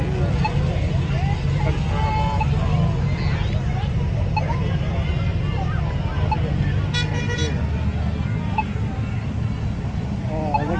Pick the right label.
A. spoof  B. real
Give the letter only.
B